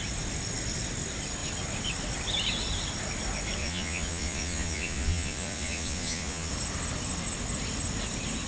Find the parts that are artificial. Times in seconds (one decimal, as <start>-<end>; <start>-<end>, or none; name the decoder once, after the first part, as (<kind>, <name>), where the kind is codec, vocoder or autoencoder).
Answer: 3.6-6.5 (vocoder, Vocos)